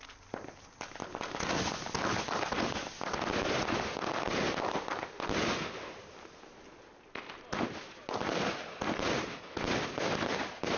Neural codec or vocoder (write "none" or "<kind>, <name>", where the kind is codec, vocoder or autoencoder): none